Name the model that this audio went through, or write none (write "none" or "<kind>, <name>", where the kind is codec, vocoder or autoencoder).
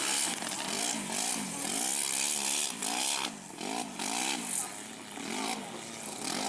none